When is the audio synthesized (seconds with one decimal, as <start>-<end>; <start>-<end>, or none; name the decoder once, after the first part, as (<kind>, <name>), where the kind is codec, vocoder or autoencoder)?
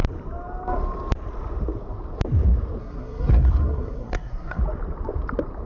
2.8-4.6 (codec, SNAC)